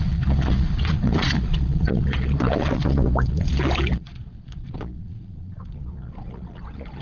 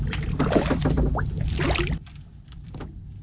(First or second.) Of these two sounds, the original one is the second